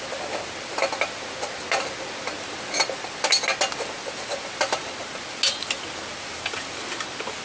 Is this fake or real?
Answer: real